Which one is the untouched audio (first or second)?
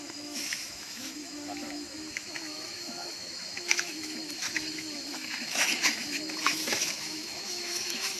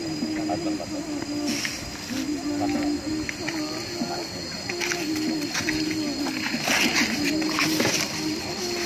second